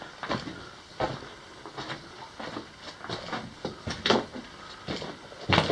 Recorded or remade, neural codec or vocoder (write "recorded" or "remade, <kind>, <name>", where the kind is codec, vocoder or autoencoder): recorded